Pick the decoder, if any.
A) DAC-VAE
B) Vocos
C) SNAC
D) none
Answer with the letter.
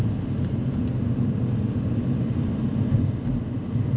D